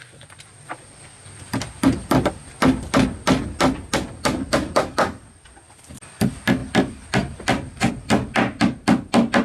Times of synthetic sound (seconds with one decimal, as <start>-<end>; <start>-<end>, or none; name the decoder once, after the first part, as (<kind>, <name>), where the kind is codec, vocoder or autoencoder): none